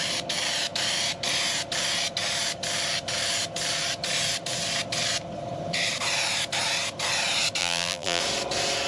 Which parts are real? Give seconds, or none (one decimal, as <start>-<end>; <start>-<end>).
0.0-7.6; 8.2-8.9